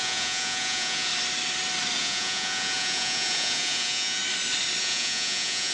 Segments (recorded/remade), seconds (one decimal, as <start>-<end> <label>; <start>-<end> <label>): 0.0-1.1 remade; 1.1-2.0 recorded; 2.0-4.2 remade; 4.2-4.8 recorded; 4.8-5.7 remade